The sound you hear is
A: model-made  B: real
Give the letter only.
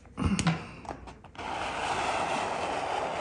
B